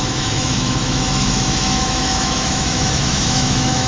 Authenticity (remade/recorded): remade